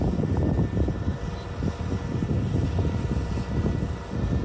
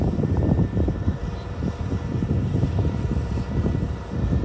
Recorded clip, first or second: first